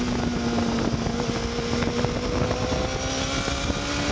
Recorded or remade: recorded